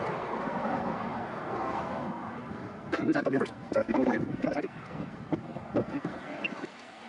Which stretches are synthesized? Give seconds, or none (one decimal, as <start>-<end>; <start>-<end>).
0.0-7.1